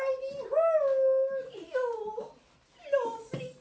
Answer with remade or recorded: recorded